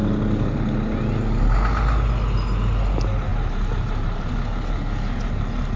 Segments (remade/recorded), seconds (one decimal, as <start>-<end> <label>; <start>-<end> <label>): 0.0-3.3 recorded; 3.3-4.3 remade; 4.3-5.8 recorded

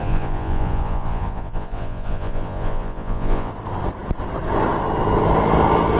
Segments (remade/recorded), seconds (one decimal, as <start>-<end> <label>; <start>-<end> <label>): 0.0-3.5 remade; 3.5-6.0 recorded

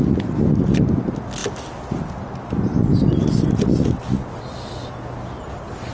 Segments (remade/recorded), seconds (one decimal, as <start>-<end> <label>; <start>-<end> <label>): 0.0-5.9 recorded

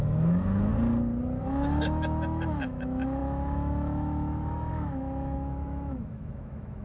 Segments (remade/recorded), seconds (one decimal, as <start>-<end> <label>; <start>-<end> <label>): 0.0-0.7 remade; 0.7-1.4 recorded; 1.4-6.8 remade

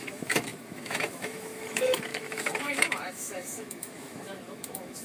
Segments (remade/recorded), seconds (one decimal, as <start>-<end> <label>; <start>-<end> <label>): 0.0-5.0 remade

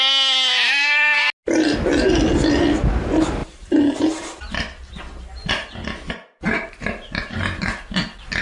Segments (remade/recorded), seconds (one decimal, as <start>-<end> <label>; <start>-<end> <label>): 0.0-8.4 recorded

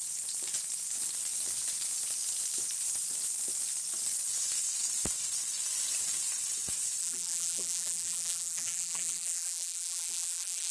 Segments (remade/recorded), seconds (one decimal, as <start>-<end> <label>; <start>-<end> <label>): 0.0-7.0 recorded; 7.0-10.7 remade